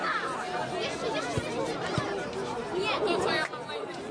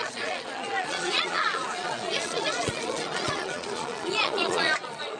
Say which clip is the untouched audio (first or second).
first